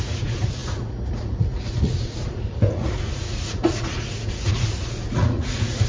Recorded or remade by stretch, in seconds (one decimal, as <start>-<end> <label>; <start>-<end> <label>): 0.0-5.9 remade